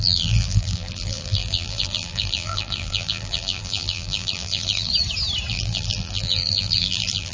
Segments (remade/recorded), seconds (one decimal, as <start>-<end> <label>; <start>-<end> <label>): 0.0-4.9 remade; 4.9-5.5 recorded; 5.5-7.3 remade